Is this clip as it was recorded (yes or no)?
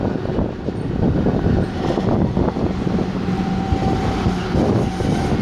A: yes